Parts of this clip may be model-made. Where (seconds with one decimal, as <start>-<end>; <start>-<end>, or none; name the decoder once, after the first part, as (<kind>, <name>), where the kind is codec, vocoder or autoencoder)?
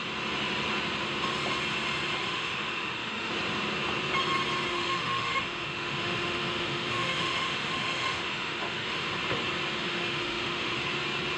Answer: 2.2-3.3 (autoencoder, DAC-VAE); 4.7-9.1; 9.8-10.8